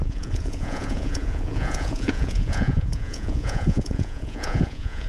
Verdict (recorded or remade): remade